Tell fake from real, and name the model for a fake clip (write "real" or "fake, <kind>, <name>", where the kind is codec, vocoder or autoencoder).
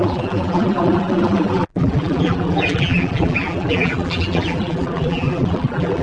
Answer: fake, vocoder, BigVGAN v2